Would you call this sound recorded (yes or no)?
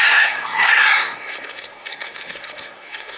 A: no